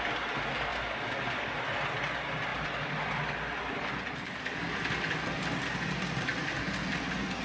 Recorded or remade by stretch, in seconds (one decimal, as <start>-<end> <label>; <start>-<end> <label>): 0.0-0.7 recorded; 0.7-1.5 remade; 1.5-6.3 recorded; 6.3-6.9 remade; 6.9-7.4 recorded